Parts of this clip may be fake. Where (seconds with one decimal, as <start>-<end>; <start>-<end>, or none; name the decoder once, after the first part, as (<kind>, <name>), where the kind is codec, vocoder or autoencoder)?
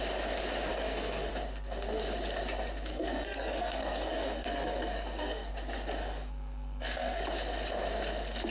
0.7-1.3 (codec, SNAC); 2.9-5.5; 6.0-7.2